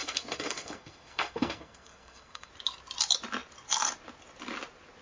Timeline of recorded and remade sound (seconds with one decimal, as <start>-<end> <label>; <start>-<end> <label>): 0.0-2.5 remade; 2.5-5.0 recorded